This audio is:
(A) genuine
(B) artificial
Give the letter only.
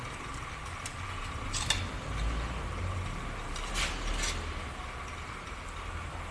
A